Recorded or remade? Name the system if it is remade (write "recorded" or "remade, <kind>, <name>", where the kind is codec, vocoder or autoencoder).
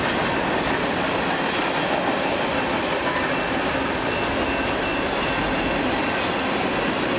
recorded